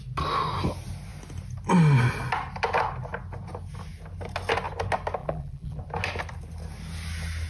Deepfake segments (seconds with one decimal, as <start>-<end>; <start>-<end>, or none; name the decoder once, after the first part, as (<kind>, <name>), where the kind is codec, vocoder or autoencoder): 5.2-5.8 (vocoder, BigVGAN v2)